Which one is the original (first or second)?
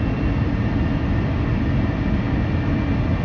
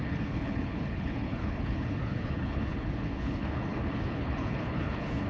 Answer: first